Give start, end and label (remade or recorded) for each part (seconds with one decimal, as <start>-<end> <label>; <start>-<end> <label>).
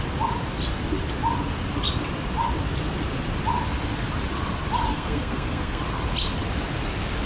0.0-4.9 recorded; 4.9-5.8 remade; 5.8-7.3 recorded